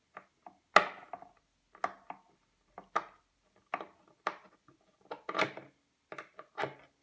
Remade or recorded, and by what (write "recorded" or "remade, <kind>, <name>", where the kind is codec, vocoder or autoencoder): recorded